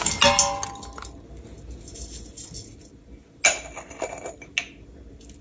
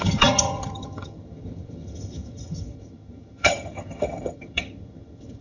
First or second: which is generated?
second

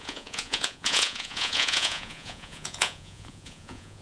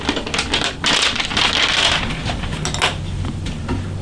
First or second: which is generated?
first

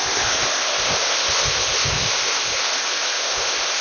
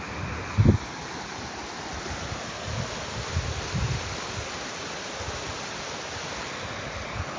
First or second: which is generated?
first